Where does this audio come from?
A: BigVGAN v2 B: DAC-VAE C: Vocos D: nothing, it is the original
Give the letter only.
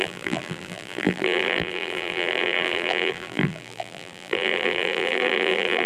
A